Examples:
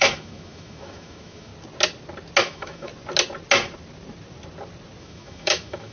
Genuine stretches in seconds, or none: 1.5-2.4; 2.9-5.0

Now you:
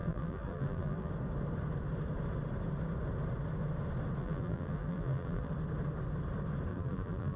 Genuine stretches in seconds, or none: 1.1-4.2; 5.5-6.7

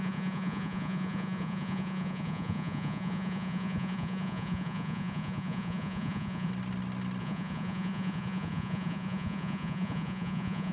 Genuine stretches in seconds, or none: 6.5-7.2

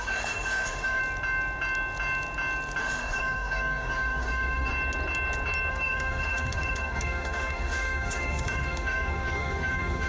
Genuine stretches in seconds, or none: 1.0-2.8; 4.7-5.7

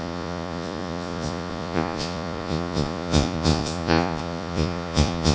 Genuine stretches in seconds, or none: none